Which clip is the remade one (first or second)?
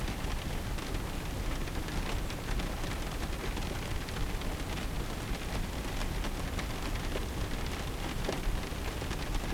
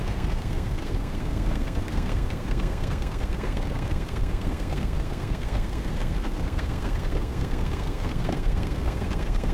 second